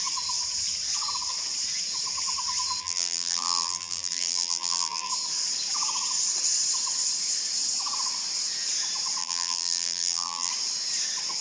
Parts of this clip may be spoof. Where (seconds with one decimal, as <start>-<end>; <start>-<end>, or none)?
2.8-5.1; 9.2-10.5